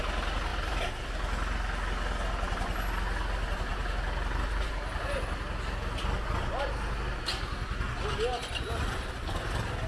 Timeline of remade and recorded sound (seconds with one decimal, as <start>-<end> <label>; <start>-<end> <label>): 0.0-0.5 recorded; 0.5-1.1 remade; 1.1-8.3 recorded; 8.3-9.1 remade; 9.1-9.9 recorded

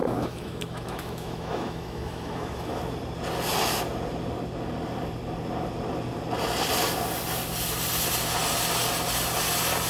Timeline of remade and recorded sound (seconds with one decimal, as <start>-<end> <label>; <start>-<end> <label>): 0.0-2.8 remade; 2.8-9.9 recorded

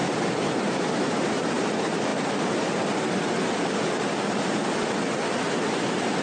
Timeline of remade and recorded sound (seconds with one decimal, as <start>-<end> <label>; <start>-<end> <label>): 0.0-1.6 remade; 1.6-6.2 recorded

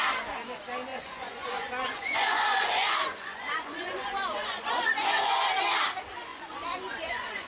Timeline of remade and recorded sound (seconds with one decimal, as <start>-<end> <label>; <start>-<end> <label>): 0.0-0.9 recorded; 0.9-5.4 remade; 5.4-6.3 recorded; 6.3-7.5 remade

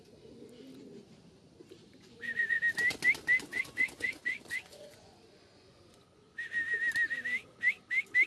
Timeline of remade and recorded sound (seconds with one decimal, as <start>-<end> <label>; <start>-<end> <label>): 0.0-1.8 recorded; 1.8-2.6 remade; 2.6-3.5 recorded; 3.5-6.4 remade; 6.4-8.3 recorded

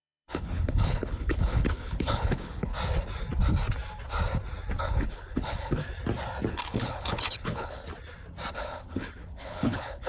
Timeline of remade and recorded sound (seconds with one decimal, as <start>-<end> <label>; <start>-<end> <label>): 0.0-2.7 remade; 2.7-4.8 recorded; 4.8-5.8 remade; 5.8-6.5 recorded; 6.5-7.8 remade; 7.8-8.5 recorded; 8.5-10.1 remade

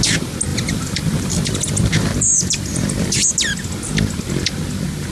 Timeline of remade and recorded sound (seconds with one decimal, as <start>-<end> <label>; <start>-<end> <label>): 0.0-0.5 recorded; 0.5-3.3 remade; 3.3-5.1 recorded

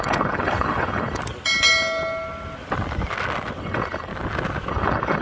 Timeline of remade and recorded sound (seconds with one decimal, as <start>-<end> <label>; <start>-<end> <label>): 0.0-1.2 remade; 1.2-3.6 recorded; 3.6-4.1 remade; 4.1-4.7 recorded; 4.7-5.2 remade